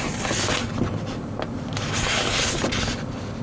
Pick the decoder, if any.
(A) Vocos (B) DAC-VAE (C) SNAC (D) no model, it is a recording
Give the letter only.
D